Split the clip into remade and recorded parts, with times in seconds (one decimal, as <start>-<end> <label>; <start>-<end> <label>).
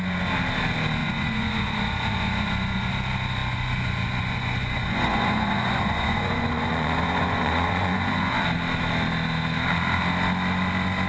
0.0-1.0 recorded; 1.0-2.9 remade; 2.9-3.4 recorded; 3.4-8.4 remade; 8.4-11.1 recorded